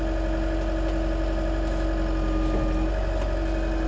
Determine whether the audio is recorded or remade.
recorded